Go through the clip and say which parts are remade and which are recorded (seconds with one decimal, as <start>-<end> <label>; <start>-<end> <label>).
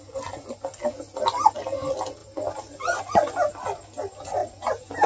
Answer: 0.0-4.4 recorded; 4.4-5.1 remade